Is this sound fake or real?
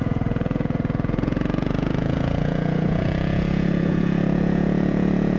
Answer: fake